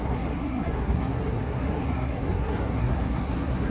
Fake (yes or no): yes